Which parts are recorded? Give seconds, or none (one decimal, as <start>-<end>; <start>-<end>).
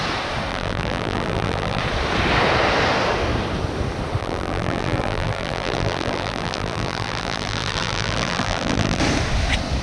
0.0-0.5; 1.8-4.2; 9.0-9.8